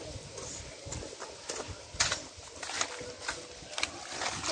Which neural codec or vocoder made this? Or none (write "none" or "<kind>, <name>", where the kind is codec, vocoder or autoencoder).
none